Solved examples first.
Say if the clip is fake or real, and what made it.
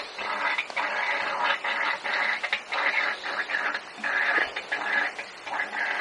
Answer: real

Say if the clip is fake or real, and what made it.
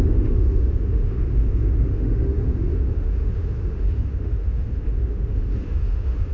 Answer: fake, autoencoder, DAC-VAE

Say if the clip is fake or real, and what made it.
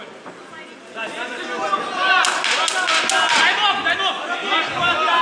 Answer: real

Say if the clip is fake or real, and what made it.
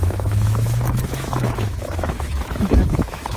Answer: fake, autoencoder, DAC-VAE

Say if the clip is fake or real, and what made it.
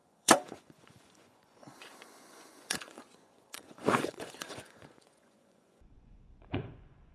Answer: fake, vocoder, Vocos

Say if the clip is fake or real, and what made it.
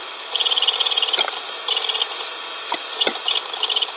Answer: real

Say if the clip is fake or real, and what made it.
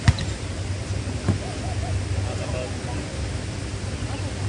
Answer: real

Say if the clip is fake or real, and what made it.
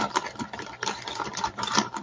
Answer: fake, vocoder, BigVGAN v2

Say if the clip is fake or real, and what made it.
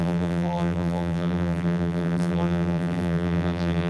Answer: fake, vocoder, BigVGAN v2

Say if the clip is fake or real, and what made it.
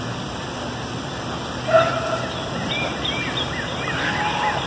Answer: real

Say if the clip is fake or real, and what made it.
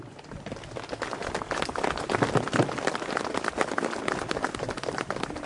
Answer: real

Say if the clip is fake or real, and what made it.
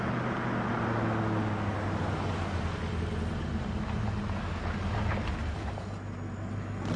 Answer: real